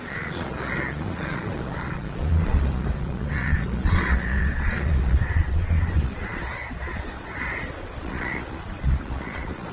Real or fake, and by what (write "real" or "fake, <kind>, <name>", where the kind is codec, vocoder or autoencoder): fake, vocoder, Vocos